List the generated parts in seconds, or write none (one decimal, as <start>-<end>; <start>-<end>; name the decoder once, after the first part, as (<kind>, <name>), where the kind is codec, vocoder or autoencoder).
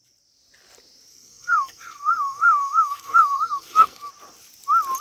1.1-4.1 (codec, SNAC)